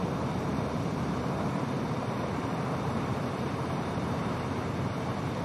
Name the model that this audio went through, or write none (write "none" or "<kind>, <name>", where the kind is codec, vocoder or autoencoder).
vocoder, BigVGAN v2